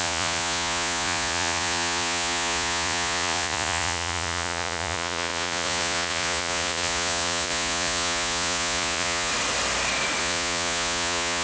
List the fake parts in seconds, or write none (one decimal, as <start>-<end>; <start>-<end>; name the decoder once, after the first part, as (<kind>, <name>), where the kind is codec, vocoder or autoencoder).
0.0-9.3 (vocoder, Vocos); 10.2-11.4